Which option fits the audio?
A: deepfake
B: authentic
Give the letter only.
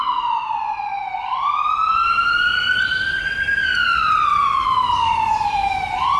B